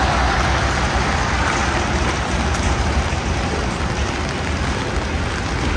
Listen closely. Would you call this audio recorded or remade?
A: remade